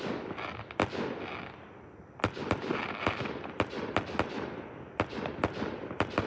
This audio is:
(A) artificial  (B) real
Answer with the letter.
B